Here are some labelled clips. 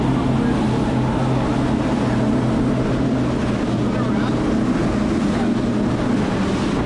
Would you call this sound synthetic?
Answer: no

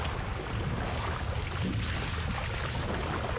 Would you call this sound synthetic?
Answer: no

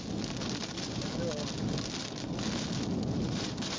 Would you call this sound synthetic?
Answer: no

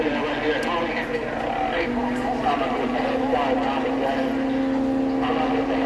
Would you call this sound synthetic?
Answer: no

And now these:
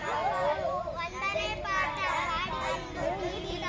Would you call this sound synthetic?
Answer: no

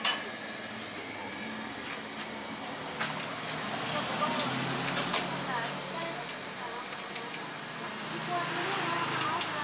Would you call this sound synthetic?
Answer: no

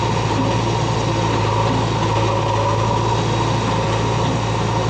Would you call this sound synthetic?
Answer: no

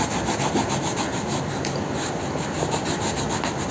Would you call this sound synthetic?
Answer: no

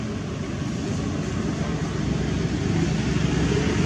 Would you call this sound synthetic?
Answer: no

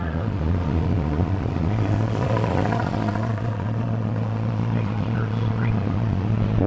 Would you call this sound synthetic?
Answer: yes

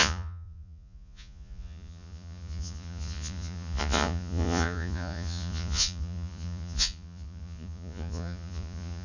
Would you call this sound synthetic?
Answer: yes